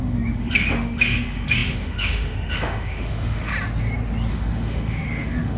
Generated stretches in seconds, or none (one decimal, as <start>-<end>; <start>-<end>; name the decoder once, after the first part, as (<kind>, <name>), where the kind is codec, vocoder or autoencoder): 0.0-3.5 (autoencoder, DAC-VAE); 4.3-5.6